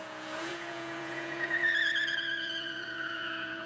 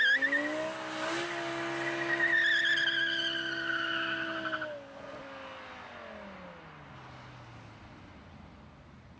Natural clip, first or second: second